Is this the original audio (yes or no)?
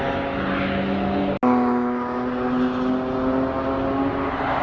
yes